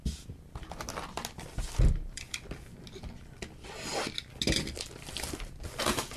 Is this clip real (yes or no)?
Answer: yes